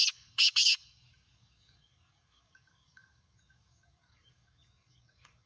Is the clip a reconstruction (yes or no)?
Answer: yes